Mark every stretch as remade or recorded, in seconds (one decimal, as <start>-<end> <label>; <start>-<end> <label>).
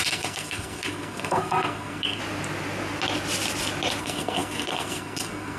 0.0-2.2 remade; 2.2-4.0 recorded; 4.0-5.6 remade